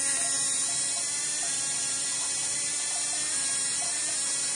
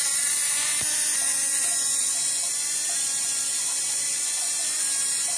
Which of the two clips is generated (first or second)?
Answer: second